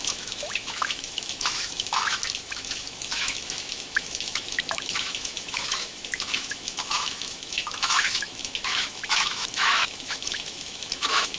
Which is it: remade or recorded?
remade